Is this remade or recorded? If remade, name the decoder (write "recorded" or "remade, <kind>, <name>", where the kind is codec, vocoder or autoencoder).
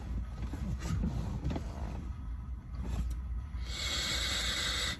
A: recorded